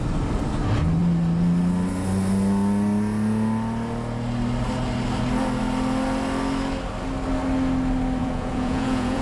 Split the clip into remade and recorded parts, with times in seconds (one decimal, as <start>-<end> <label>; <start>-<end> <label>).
0.0-8.2 recorded; 8.2-9.2 remade